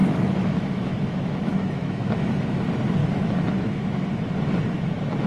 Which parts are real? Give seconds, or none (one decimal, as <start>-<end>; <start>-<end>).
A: 2.6-3.0; 4.1-5.3